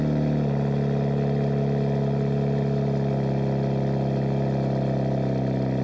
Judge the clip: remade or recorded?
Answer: recorded